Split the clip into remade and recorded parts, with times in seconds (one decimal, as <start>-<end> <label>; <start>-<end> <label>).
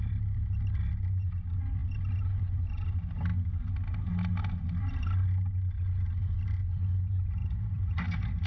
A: 0.0-7.4 recorded; 7.4-8.0 remade; 8.0-8.5 recorded